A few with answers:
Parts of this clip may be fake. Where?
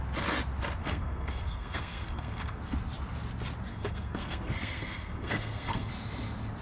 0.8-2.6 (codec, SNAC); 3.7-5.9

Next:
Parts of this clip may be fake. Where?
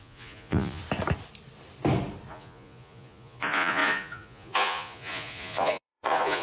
0.0-0.8 (vocoder, Vocos); 2.3-6.4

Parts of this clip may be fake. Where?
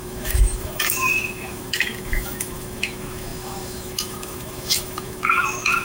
0.0-5.8 (autoencoder, DAC-VAE)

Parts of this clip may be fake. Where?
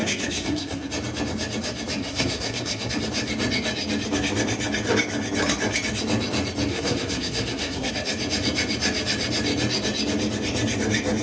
0.0-0.9 (codec, SNAC); 2.0-2.9; 6.7-7.9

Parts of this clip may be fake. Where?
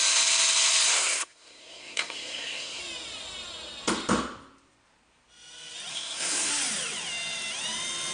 0.9-2.8 (codec, SNAC); 5.9-6.5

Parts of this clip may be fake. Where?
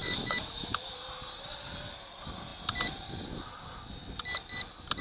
0.0-0.9 (autoencoder, DAC-VAE)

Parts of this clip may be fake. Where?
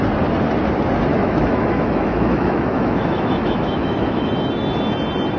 1.1-4.3 (autoencoder, DAC-VAE)